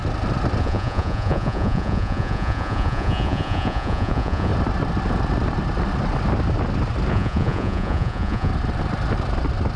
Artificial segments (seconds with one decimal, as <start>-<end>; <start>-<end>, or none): 0.6-4.5; 7.1-8.5